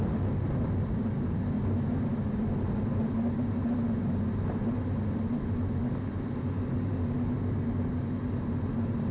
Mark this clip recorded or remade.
recorded